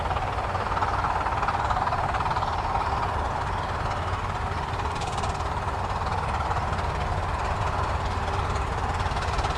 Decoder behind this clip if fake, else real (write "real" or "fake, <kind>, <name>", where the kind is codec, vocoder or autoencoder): fake, vocoder, BigVGAN v2